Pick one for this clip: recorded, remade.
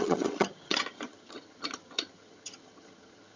remade